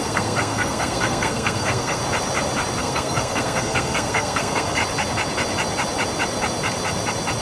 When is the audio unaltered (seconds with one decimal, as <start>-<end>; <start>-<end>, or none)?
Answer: 2.0-2.8; 4.8-7.4